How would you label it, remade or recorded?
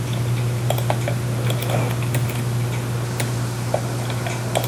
recorded